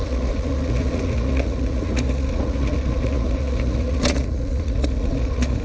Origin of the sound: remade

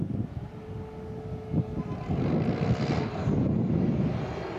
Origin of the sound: recorded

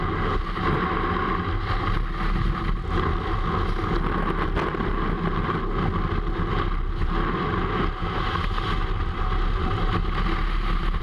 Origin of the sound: recorded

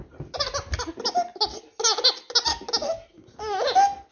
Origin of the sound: recorded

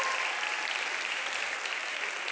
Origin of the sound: recorded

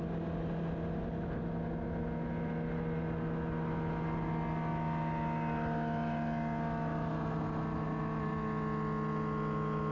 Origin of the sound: recorded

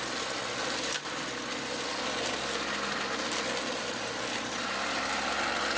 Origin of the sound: recorded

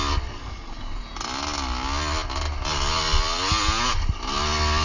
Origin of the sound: recorded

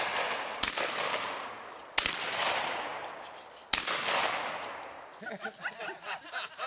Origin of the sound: recorded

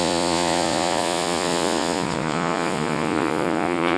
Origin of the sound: remade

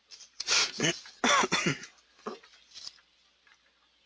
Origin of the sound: recorded